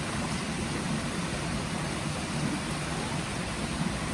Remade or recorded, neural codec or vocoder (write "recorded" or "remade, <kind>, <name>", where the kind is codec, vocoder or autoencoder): recorded